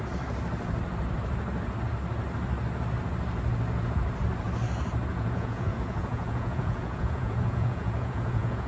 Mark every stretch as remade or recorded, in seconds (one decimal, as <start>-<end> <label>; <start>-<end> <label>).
0.0-5.1 recorded; 5.1-8.7 remade